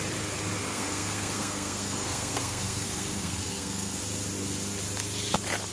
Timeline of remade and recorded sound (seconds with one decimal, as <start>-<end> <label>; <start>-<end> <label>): 0.0-0.7 recorded; 0.7-4.0 remade; 4.0-5.7 recorded